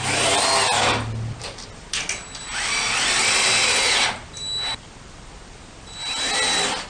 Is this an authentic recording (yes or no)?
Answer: yes